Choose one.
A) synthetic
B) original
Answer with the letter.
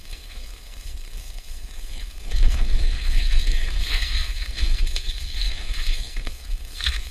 A